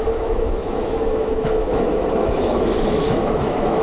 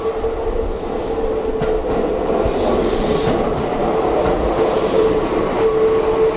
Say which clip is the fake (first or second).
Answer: first